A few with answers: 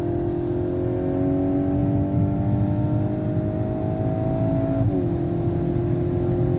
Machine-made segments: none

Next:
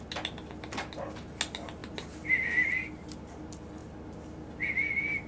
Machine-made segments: none

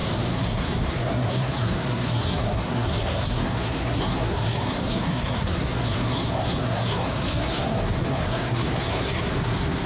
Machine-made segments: 0.0-9.9 (codec, SNAC)

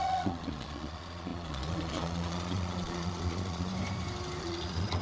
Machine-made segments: 0.0-3.7 (vocoder, Vocos); 4.4-5.0

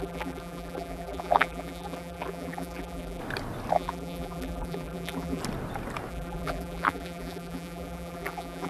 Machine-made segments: 0.0-3.2 (vocoder, BigVGAN v2); 3.7-5.4; 6.1-8.7

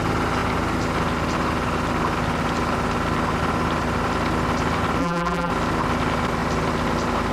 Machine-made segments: 5.0-5.5 (vocoder, BigVGAN v2)

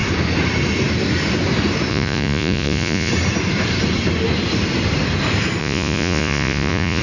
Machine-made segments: 1.9-3.1 (vocoder, Vocos); 5.6-7.0